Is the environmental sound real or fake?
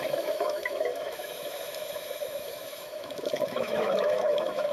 fake